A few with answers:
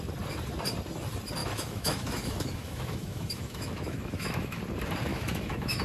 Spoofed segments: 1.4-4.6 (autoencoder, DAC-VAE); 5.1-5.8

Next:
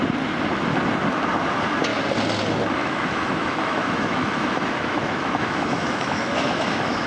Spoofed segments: 2.8-7.1 (autoencoder, DAC-VAE)

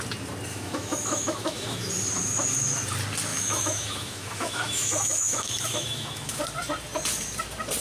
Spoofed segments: 0.5-1.9 (autoencoder, DAC-VAE); 3.3-6.4

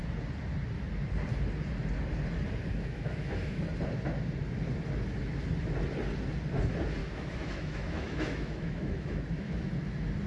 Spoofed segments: 2.7-3.6 (autoencoder, DAC-VAE); 7.0-9.7

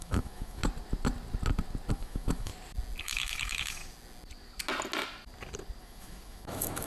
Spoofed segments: 0.0-0.6 (autoencoder, DAC-VAE); 1.9-2.5; 3.0-3.8; 5.8-6.9

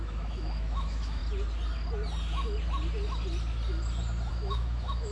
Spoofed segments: 0.0-1.2 (autoencoder, DAC-VAE); 4.3-5.1

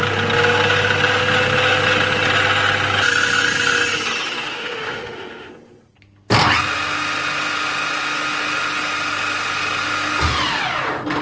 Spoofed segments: 4.5-5.5 (autoencoder, DAC-VAE)